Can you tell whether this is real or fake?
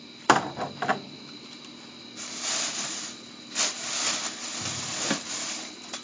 real